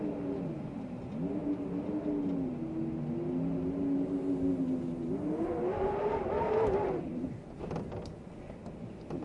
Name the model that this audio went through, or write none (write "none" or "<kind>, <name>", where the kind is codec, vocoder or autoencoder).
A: none